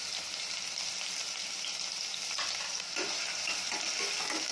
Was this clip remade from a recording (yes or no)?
no